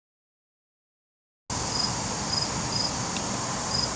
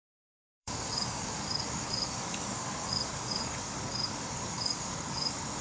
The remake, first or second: second